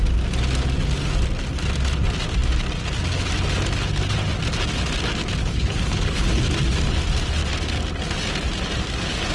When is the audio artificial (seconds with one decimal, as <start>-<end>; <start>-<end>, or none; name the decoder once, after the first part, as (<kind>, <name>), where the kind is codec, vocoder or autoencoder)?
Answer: 5.4-6.4 (codec, HILCodec)